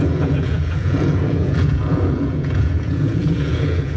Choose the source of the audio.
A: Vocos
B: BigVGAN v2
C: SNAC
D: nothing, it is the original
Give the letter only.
A